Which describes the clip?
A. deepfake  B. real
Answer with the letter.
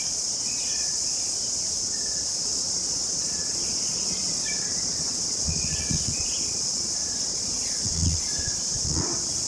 A